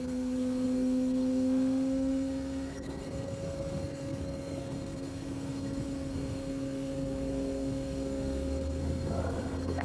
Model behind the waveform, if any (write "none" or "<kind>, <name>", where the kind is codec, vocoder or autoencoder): codec, SNAC